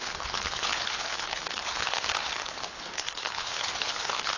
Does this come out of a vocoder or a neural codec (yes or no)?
yes